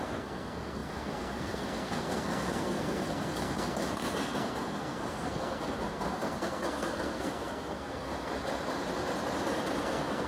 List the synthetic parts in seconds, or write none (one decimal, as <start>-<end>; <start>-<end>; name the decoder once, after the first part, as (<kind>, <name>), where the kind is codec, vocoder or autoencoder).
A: 0.0-8.3 (codec, SNAC); 9.8-10.3